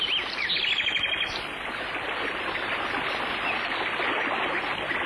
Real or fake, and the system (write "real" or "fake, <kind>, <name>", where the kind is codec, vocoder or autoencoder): real